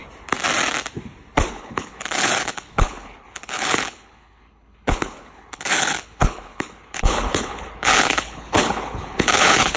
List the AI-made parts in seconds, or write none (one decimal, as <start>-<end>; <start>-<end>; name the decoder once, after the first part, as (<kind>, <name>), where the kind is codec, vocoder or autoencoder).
1.5-9.8 (codec, HILCodec)